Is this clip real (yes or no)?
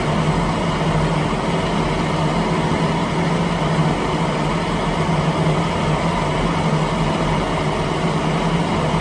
yes